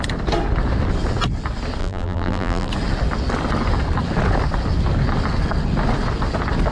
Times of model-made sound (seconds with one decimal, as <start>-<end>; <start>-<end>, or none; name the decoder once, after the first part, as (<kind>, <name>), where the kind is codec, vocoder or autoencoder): 1.8-2.7 (vocoder, BigVGAN v2)